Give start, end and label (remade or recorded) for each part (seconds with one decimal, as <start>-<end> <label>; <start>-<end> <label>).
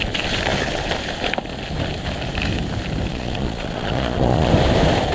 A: 0.0-3.1 recorded; 3.1-4.5 remade; 4.5-5.1 recorded